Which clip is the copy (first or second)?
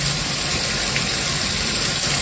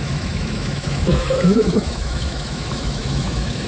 second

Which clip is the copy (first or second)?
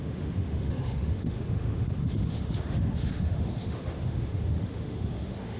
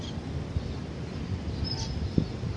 first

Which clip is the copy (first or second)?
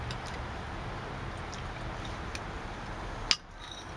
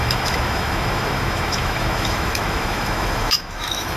second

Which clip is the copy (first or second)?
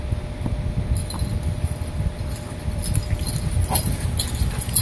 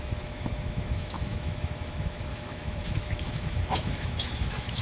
second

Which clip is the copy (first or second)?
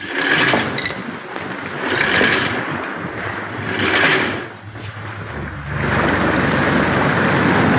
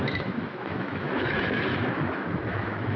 second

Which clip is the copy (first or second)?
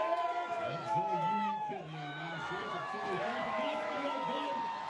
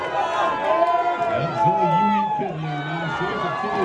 first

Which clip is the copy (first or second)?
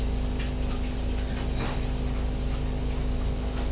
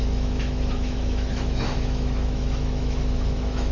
second